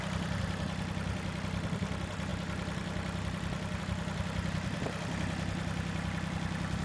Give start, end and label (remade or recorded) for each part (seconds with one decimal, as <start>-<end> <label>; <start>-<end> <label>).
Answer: 0.0-6.8 recorded